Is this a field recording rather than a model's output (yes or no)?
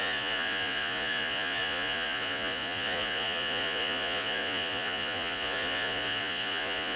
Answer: no